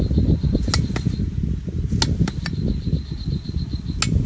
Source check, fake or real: real